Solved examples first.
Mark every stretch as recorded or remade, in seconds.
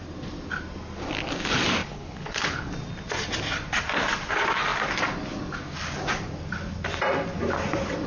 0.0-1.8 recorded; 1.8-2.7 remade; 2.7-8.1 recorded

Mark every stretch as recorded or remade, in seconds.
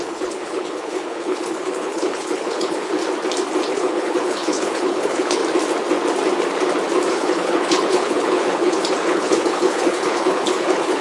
0.0-3.0 remade; 3.0-3.7 recorded; 3.7-5.4 remade; 5.4-7.1 recorded; 7.1-11.0 remade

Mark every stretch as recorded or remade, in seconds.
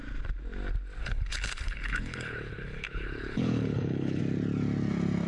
0.0-1.0 recorded; 1.0-4.2 remade; 4.2-5.3 recorded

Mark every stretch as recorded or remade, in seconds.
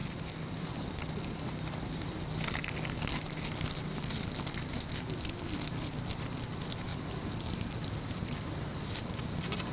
0.0-9.7 recorded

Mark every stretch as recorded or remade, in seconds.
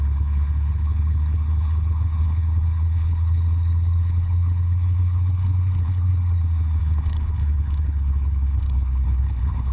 0.0-6.1 remade; 6.1-6.8 recorded; 6.8-9.7 remade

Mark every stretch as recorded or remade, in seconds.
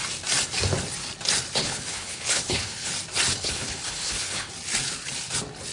0.0-1.6 recorded; 1.6-2.9 remade; 2.9-3.3 recorded; 3.3-4.5 remade; 4.5-5.7 recorded